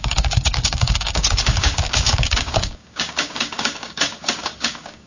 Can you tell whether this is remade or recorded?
remade